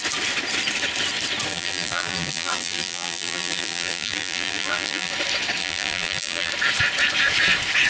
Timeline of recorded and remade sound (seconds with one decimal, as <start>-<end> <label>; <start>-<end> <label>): 0.0-1.5 recorded; 1.5-5.1 remade; 5.1-5.6 recorded; 5.6-6.5 remade; 6.5-7.9 recorded

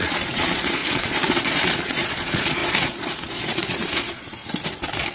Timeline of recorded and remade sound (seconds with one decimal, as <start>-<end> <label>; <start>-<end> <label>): 0.0-4.4 remade; 4.4-5.1 recorded